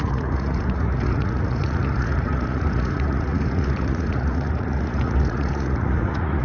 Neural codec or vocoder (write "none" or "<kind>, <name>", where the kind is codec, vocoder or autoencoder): vocoder, Vocos